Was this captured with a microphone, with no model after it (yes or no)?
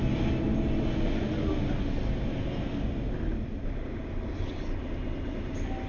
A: yes